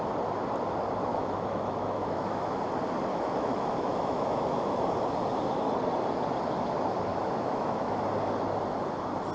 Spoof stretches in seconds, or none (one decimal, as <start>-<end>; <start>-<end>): 1.1-2.6; 3.1-4.8; 7.1-8.0